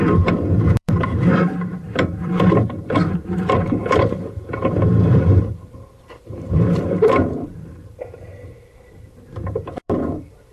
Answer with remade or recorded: remade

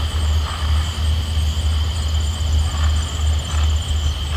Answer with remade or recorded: recorded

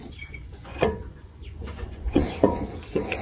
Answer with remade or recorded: remade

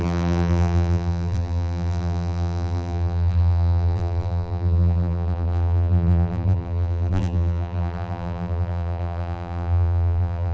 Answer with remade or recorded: remade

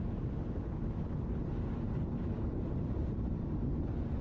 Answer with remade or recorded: recorded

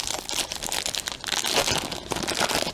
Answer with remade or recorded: recorded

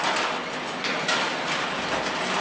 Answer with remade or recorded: recorded